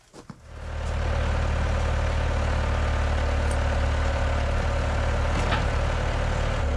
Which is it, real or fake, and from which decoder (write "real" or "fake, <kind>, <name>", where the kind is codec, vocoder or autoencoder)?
real